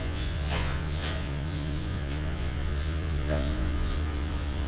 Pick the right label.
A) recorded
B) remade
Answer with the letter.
B